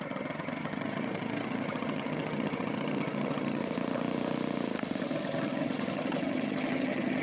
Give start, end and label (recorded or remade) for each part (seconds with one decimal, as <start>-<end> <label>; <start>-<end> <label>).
0.0-3.6 remade; 3.6-5.0 recorded; 5.0-7.2 remade